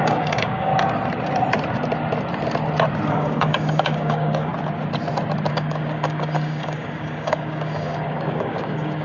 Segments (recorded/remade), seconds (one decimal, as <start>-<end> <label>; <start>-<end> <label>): 0.0-0.7 remade; 0.7-3.1 recorded; 3.1-4.5 remade; 4.5-5.5 recorded; 5.5-9.0 remade